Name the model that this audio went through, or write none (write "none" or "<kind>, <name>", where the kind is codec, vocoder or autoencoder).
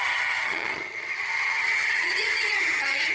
vocoder, HiFi-GAN